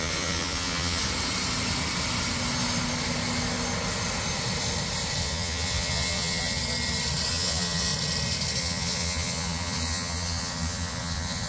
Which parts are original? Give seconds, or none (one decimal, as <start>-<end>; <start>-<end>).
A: 1.0-5.2; 6.6-7.3; 7.9-8.6